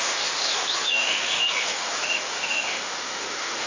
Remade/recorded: remade